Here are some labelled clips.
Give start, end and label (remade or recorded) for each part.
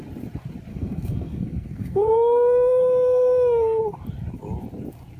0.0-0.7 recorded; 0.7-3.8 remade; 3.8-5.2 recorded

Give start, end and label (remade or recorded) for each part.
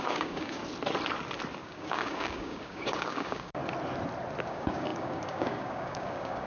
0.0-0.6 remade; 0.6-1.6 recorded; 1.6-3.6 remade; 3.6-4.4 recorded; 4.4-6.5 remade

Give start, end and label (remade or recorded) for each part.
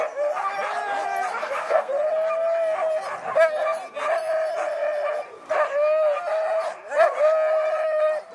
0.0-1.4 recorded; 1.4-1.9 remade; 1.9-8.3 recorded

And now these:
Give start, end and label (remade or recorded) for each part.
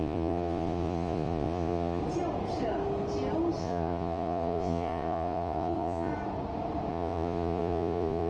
0.0-2.0 remade; 2.0-3.6 recorded; 3.6-6.1 remade; 6.1-6.9 recorded; 6.9-8.3 remade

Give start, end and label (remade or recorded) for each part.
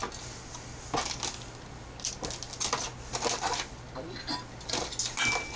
0.0-5.6 recorded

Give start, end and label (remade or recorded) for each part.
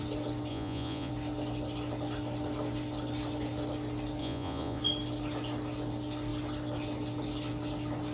0.0-0.5 recorded; 0.5-1.1 remade; 1.1-4.2 recorded; 4.2-4.8 remade; 4.8-8.1 recorded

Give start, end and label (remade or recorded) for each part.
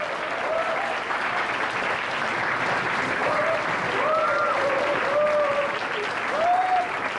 0.0-7.2 recorded